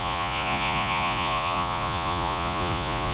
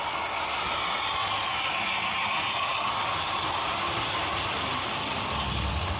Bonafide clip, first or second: second